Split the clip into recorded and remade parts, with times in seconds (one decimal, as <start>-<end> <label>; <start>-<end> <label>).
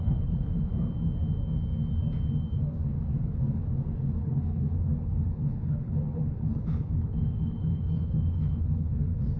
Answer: 0.0-0.7 remade; 0.7-3.2 recorded; 3.2-3.6 remade; 3.6-4.2 recorded; 4.2-9.4 remade